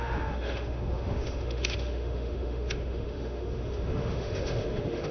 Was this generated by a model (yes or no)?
yes